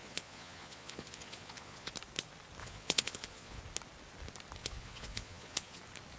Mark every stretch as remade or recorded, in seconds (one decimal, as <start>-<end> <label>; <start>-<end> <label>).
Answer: 0.0-1.9 remade; 1.9-2.6 recorded; 2.6-3.6 remade; 3.6-4.6 recorded; 4.6-5.8 remade; 5.8-6.2 recorded